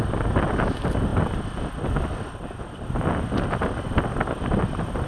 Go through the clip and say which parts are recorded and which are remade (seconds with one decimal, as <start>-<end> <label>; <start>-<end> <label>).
0.0-5.1 recorded